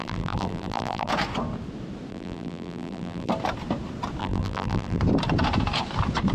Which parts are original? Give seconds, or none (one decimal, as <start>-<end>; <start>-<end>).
1.1-2.1; 3.3-4.2; 5.0-6.3